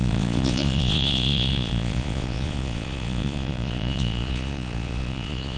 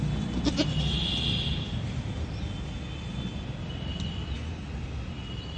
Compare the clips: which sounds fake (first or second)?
first